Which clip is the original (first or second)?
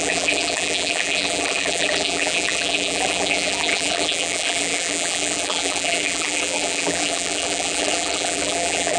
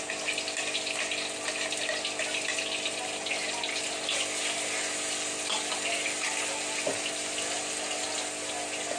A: second